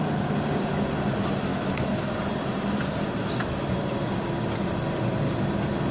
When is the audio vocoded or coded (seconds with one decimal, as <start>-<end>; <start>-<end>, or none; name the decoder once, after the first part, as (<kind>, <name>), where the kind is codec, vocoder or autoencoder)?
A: 1.5-2.1 (autoencoder, DAC-VAE); 3.2-3.8